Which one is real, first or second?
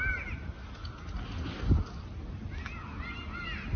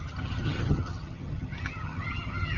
first